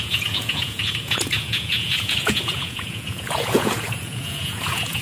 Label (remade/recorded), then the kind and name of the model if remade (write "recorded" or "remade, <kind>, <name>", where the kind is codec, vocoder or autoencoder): remade, vocoder, Vocos